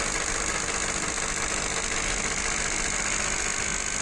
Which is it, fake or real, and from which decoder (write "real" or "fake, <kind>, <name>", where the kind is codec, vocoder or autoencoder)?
real